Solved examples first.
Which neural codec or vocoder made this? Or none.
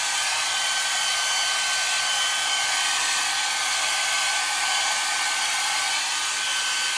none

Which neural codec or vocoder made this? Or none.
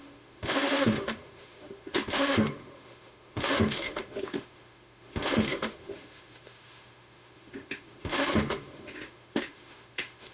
autoencoder, DAC-VAE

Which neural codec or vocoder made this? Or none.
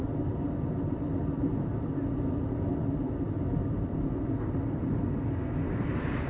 none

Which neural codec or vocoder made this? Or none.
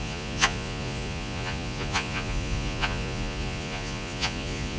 vocoder, Vocos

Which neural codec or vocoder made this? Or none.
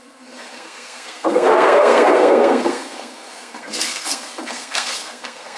codec, SNAC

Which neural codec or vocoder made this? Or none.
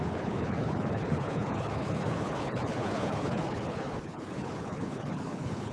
codec, HILCodec